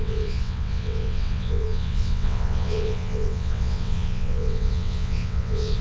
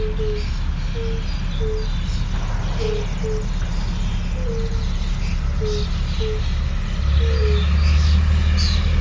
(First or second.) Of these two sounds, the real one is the second